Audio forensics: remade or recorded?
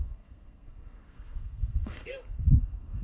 remade